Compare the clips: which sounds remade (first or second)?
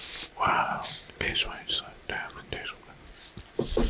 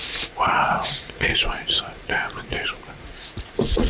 second